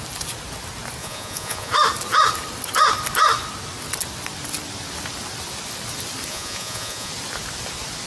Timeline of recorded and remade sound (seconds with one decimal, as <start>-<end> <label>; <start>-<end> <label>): 0.0-1.0 recorded; 1.0-1.7 remade; 1.7-6.3 recorded; 6.3-7.1 remade; 7.1-8.1 recorded